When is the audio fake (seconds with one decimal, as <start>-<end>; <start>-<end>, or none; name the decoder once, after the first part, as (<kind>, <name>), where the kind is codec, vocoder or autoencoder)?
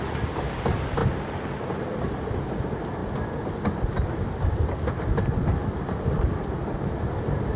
none